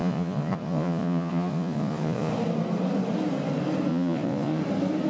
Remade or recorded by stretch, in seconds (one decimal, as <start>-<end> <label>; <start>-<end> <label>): 0.0-2.3 remade; 2.3-3.9 recorded; 3.9-4.6 remade; 4.6-5.1 recorded